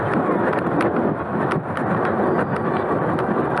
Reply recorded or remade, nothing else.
recorded